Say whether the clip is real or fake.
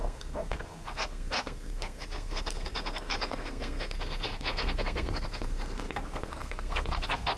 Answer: fake